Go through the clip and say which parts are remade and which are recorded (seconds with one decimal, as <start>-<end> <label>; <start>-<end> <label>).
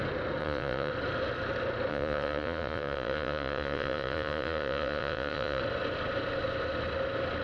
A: 0.0-0.4 recorded; 0.4-0.9 remade; 0.9-1.9 recorded; 1.9-5.6 remade; 5.6-7.4 recorded